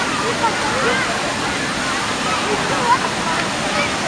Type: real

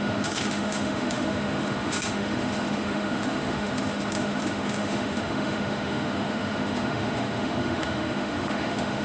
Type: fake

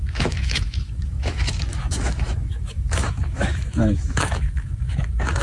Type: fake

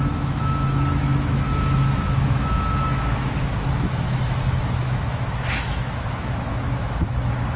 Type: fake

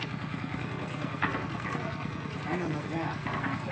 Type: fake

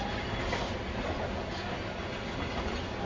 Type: real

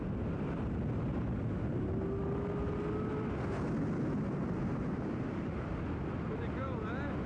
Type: real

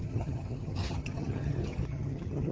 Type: fake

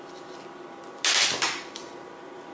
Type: real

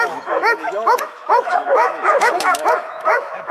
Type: fake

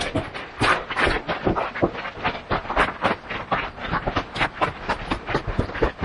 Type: real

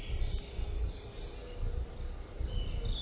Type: real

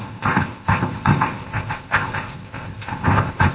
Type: fake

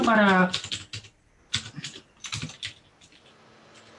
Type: real